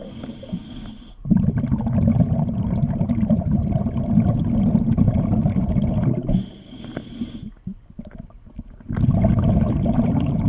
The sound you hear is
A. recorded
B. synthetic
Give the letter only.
A